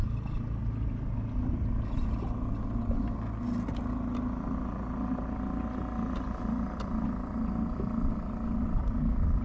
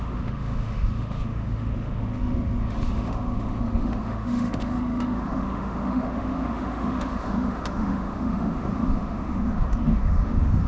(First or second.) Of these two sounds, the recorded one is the first